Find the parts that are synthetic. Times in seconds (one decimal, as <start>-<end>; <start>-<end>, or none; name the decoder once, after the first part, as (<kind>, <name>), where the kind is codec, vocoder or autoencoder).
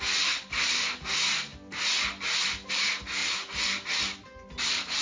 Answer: none